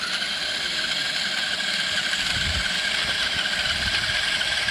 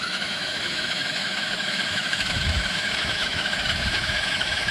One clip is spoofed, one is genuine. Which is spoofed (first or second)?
second